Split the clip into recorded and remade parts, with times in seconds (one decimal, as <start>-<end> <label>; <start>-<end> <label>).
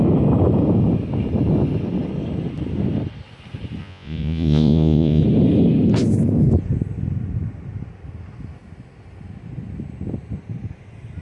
0.0-3.8 recorded; 3.8-5.2 remade; 5.2-11.2 recorded